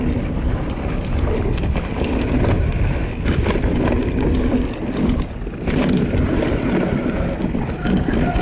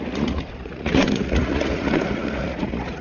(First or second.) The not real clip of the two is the second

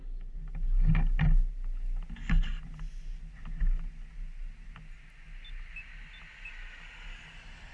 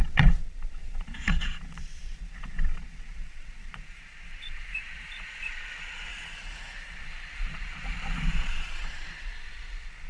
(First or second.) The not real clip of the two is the second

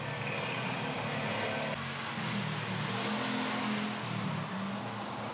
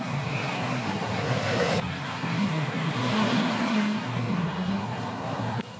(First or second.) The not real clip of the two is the second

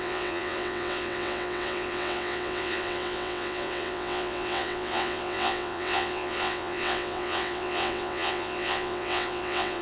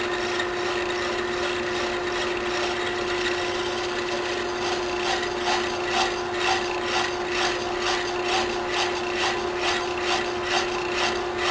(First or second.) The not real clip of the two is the first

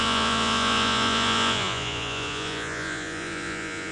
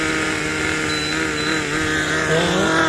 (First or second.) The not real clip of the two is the first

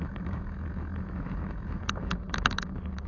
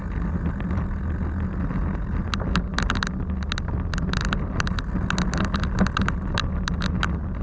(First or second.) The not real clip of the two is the first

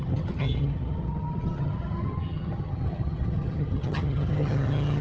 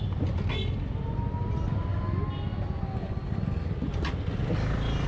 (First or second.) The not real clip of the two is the first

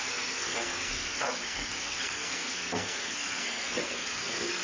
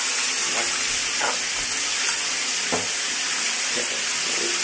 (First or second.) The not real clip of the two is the first